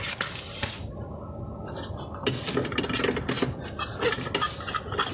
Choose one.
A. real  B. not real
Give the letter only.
A